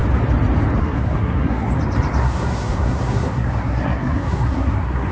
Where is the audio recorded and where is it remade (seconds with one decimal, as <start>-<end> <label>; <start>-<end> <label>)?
0.0-0.8 recorded; 0.8-1.7 remade; 1.7-2.2 recorded; 2.2-5.1 remade